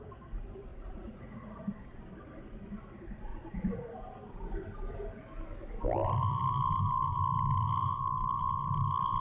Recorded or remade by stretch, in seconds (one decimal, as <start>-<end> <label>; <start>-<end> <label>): 0.0-0.7 recorded; 0.7-1.6 remade; 1.6-3.3 recorded; 3.3-3.9 remade; 3.9-9.2 recorded